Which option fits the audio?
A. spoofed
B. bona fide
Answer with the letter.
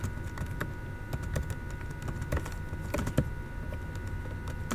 B